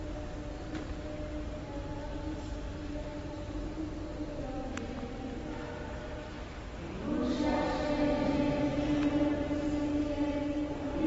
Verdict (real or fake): real